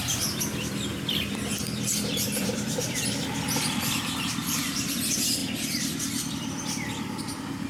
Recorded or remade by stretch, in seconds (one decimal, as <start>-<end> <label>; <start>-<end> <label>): 0.0-7.7 remade